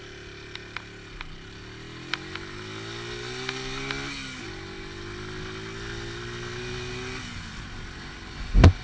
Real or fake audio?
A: real